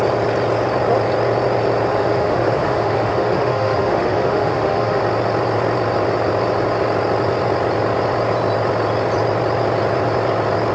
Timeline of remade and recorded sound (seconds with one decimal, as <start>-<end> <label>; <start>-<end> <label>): 0.0-1.9 recorded; 1.9-5.0 remade; 5.0-10.7 recorded